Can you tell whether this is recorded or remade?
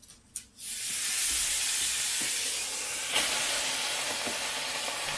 recorded